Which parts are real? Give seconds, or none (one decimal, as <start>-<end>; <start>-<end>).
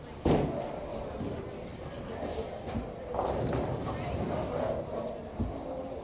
0.0-6.0